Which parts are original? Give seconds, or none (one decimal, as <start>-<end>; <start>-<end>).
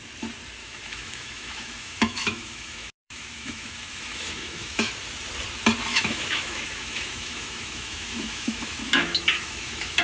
0.0-0.6; 4.9-5.9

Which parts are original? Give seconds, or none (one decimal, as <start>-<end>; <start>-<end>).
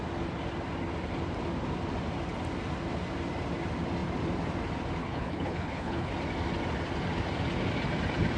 0.0-5.0; 6.1-8.4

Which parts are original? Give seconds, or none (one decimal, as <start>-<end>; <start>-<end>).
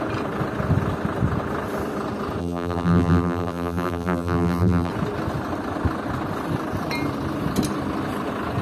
0.0-2.4; 4.9-8.6